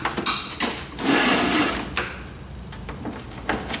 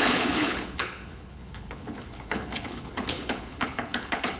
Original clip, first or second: first